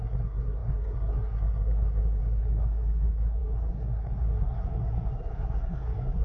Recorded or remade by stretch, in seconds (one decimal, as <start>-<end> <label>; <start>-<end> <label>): 0.0-6.2 remade